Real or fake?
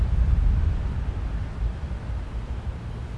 real